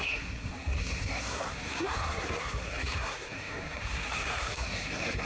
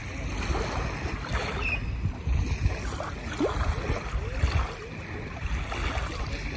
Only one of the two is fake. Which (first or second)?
first